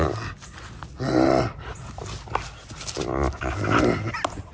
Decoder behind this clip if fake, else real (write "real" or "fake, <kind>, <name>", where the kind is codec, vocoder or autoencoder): real